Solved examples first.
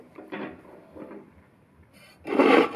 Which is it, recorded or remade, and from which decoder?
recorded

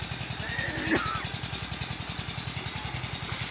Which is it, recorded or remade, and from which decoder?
recorded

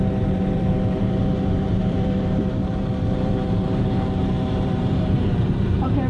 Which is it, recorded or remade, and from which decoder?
remade, vocoder, BigVGAN v2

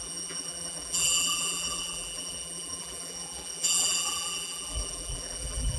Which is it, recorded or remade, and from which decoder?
remade, vocoder, BigVGAN v2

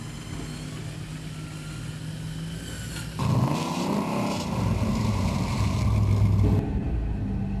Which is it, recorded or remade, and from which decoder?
recorded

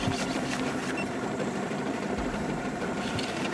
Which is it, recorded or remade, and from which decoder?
remade, vocoder, BigVGAN v2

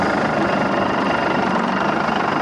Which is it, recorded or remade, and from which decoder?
recorded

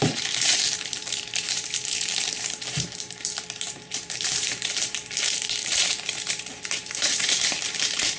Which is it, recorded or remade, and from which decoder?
remade, vocoder, BigVGAN v2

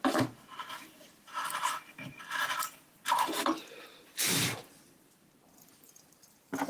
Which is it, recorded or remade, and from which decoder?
remade, vocoder, BigVGAN v2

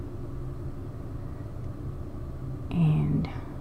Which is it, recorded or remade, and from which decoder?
recorded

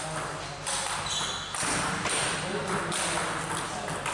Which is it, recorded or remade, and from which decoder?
recorded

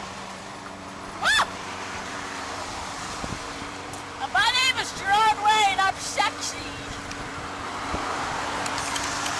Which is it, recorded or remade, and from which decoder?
remade, vocoder, BigVGAN v2